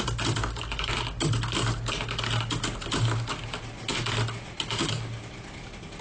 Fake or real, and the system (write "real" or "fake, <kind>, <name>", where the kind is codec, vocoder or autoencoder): real